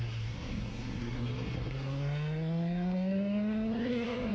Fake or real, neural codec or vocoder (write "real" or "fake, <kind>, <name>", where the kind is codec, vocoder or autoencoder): fake, codec, SNAC